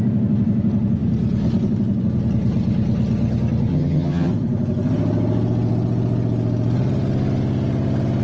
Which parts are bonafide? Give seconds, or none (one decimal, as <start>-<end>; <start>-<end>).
0.0-3.7; 4.3-8.2